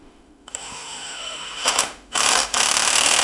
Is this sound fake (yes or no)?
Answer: yes